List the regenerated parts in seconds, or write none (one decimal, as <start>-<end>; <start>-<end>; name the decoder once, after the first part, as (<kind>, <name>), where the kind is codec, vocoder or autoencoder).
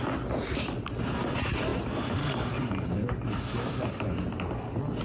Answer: none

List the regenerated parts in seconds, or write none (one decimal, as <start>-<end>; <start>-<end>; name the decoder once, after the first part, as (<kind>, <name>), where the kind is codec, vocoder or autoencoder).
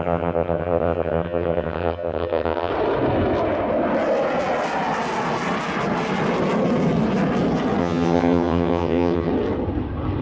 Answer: 0.0-2.7 (vocoder, HiFi-GAN); 7.8-9.3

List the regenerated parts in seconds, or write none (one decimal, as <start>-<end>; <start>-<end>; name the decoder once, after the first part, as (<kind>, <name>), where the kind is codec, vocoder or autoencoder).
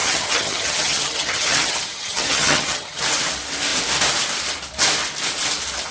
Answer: 0.0-3.0 (vocoder, HiFi-GAN)